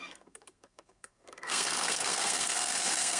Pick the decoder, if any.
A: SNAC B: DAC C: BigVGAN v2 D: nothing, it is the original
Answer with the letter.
A